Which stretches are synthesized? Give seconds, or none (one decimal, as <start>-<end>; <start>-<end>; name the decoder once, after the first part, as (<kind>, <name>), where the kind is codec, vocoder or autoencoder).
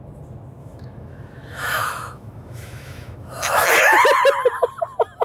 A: 0.6-3.7 (autoencoder, DAC-VAE)